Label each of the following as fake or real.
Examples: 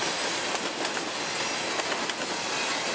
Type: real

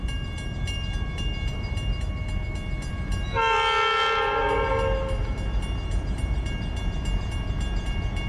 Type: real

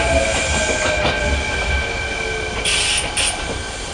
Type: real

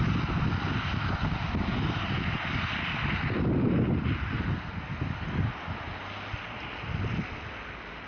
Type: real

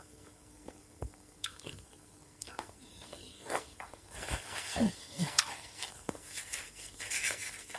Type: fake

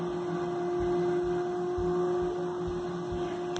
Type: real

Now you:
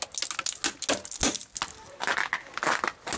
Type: real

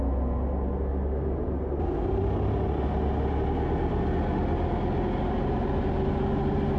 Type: real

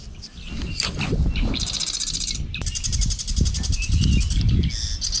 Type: real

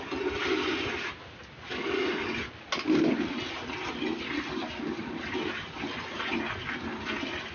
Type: real